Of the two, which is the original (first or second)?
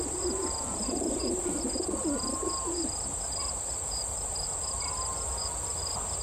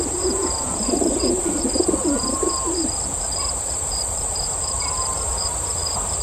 first